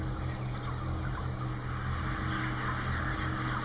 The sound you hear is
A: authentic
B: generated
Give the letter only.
A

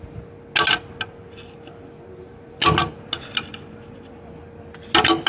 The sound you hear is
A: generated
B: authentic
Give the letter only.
B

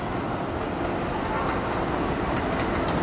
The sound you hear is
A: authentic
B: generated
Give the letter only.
A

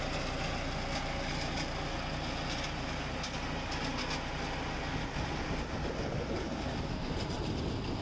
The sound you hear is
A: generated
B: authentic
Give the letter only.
B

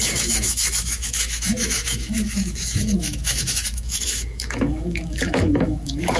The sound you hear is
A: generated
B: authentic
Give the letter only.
A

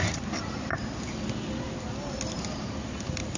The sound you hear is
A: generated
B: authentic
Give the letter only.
B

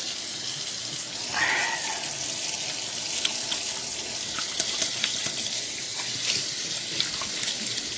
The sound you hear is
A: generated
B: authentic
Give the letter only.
B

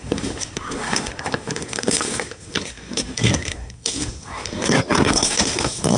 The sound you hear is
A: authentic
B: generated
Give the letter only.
B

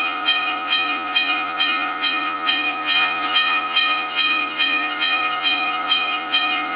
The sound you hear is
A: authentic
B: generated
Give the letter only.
B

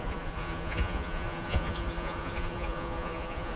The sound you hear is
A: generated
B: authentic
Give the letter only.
A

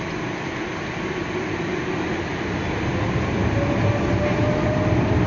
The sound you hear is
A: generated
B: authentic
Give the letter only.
B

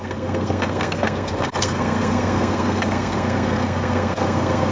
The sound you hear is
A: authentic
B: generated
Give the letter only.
B